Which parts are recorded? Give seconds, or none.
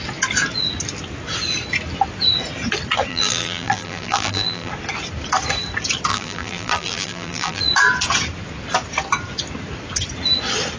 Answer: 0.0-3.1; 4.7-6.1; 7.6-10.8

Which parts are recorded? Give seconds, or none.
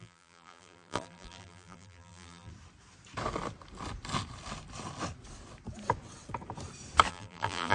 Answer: 2.5-7.1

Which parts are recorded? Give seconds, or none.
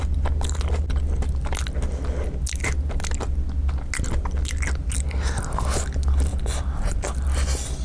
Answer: 0.0-6.3; 7.2-7.8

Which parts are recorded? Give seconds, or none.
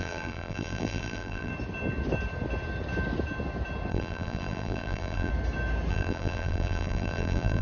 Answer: 1.5-3.9; 5.3-5.9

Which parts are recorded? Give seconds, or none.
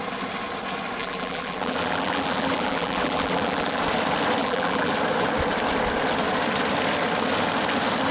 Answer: 0.0-1.0; 3.8-4.4; 4.9-8.1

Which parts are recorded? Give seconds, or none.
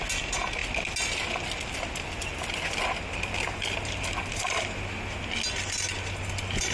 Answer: 0.0-6.7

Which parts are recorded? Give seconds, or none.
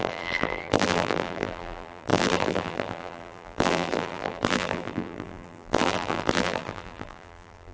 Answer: none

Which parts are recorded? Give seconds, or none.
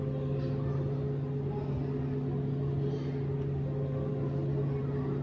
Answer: 0.0-5.2